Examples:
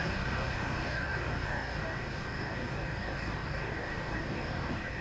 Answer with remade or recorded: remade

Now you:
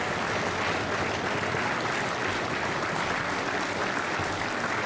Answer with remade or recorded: recorded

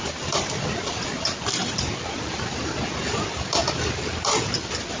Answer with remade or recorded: recorded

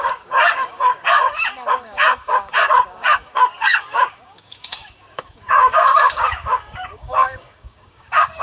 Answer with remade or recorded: remade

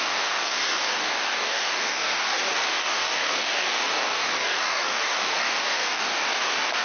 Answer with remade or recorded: remade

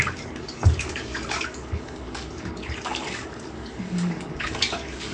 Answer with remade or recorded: remade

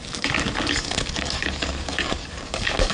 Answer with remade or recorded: remade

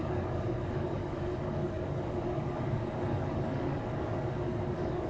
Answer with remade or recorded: remade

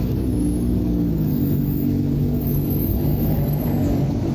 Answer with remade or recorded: remade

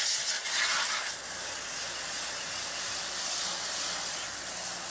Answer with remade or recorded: recorded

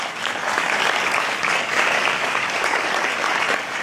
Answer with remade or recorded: remade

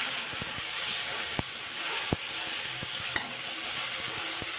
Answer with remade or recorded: remade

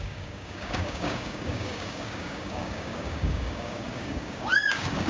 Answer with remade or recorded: remade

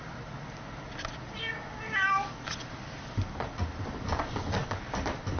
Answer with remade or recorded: recorded